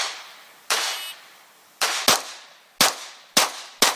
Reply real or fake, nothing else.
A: real